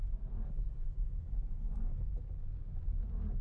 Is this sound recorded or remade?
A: recorded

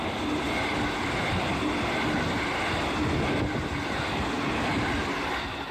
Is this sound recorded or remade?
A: recorded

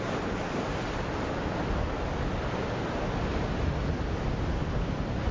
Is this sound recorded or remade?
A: recorded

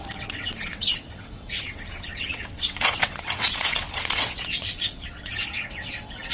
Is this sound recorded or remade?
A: remade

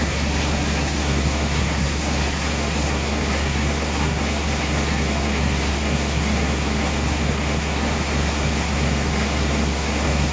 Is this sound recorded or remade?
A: remade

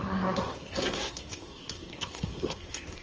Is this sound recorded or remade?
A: remade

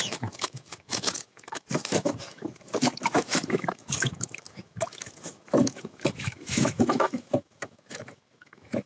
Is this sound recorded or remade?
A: remade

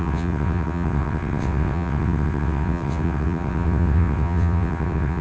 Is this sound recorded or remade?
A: remade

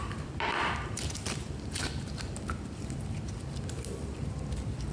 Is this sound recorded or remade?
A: remade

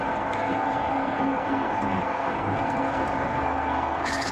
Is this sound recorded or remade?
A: remade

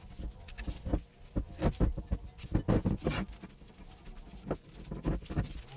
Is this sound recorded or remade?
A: recorded